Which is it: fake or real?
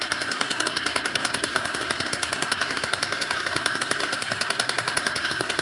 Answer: fake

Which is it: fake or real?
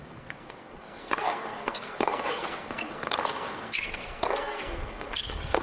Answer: fake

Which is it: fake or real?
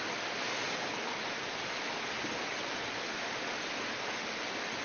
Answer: real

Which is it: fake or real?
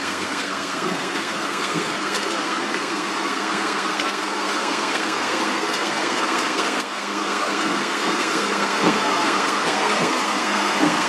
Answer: fake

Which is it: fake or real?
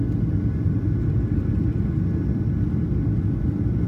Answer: real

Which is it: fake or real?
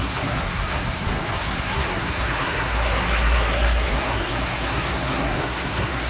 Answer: fake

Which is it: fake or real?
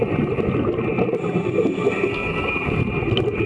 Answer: real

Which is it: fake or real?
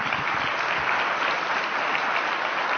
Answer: real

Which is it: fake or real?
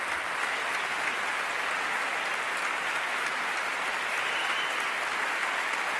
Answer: real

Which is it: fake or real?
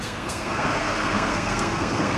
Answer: fake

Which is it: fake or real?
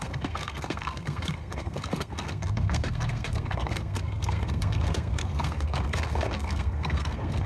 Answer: fake